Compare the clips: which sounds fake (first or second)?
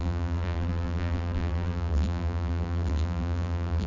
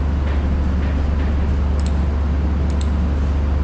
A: first